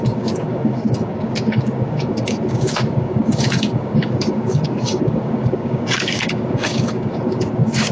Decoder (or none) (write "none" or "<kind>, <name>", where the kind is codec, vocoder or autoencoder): codec, DAC